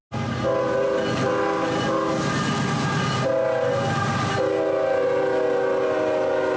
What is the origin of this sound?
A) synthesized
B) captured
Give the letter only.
B